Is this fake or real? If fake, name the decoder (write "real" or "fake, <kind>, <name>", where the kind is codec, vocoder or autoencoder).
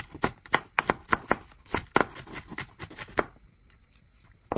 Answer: real